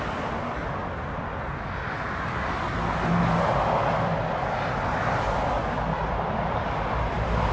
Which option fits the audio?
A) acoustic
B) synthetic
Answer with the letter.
A